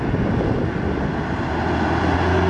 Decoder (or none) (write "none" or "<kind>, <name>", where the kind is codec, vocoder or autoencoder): none